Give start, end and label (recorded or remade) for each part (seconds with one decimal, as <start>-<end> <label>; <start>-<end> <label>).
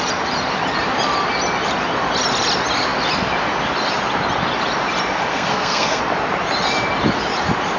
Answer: 0.0-5.3 recorded; 5.3-6.0 remade; 6.0-7.8 recorded